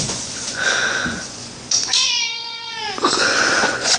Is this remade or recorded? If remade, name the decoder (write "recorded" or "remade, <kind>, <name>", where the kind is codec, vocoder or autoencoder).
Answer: remade, vocoder, Vocos